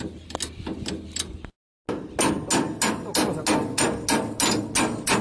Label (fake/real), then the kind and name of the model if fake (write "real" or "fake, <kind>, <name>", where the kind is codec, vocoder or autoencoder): real